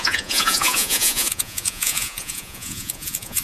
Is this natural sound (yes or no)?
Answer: no